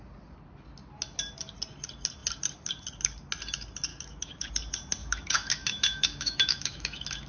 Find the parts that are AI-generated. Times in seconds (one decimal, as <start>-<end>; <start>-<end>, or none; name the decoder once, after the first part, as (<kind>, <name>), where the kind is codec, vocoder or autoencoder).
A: 3.9-4.5 (autoencoder, DAC-VAE); 5.0-7.3

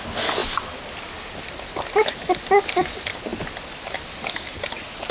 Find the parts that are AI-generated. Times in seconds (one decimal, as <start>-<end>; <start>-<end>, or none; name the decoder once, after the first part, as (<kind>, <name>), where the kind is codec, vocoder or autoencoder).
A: none

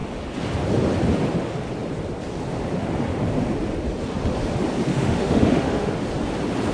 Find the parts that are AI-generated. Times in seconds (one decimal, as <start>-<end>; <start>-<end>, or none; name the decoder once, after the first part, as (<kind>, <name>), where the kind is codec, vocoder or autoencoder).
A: 4.9-5.9 (autoencoder, DAC-VAE)

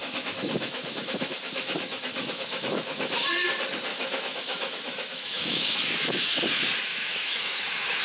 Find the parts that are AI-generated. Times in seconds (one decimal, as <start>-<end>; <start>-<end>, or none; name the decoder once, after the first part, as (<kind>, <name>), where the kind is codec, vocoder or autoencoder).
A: 0.0-3.1 (autoencoder, DAC-VAE); 3.9-6.5; 6.9-8.0

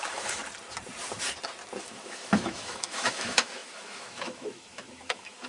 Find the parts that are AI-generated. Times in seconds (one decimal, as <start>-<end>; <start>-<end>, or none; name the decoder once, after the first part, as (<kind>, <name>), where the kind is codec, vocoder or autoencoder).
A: 0.0-0.4 (autoencoder, DAC-VAE); 1.8-5.5

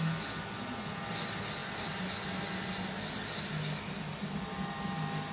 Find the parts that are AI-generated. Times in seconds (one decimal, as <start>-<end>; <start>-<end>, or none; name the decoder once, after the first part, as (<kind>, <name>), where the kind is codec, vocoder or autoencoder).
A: none

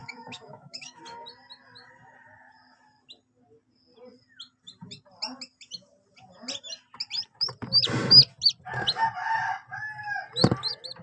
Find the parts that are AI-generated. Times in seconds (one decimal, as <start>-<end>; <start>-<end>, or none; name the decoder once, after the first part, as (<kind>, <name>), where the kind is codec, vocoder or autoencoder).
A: 0.0-1.0 (autoencoder, DAC-VAE)